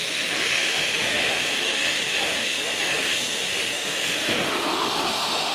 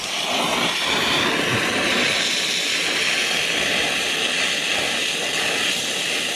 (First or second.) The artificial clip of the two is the first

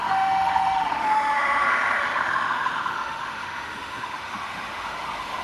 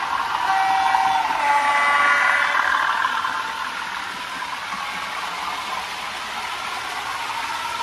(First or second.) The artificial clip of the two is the first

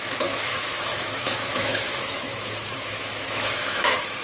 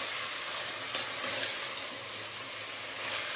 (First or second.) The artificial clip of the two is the first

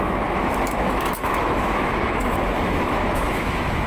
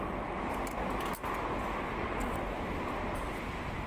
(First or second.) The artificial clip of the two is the first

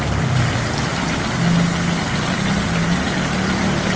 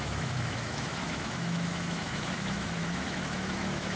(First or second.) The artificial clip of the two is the second